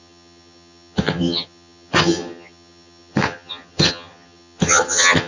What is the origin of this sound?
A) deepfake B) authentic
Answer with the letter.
A